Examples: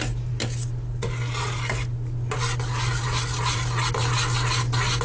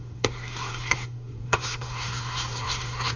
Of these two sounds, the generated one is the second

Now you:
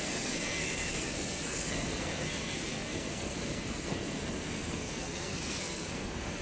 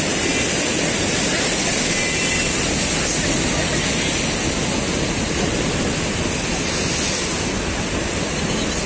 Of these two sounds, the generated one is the first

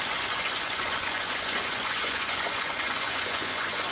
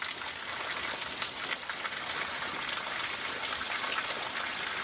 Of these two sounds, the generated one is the first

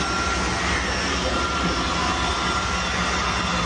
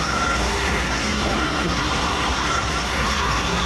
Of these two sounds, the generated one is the second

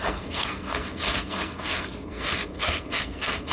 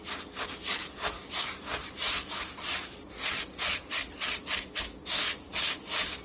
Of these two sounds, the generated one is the first